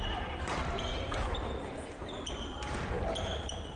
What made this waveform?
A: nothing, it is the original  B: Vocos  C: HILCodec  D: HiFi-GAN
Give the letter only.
A